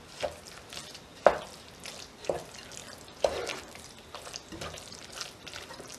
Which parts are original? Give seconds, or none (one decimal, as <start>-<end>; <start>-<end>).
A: 1.1-2.2